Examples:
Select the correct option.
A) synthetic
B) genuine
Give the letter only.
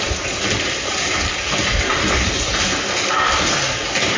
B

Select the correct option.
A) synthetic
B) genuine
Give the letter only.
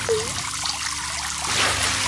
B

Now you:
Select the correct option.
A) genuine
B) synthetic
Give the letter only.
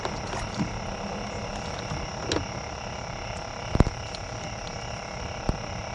A